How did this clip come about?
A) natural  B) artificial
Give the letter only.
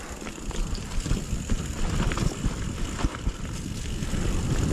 A